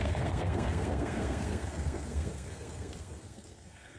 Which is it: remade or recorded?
remade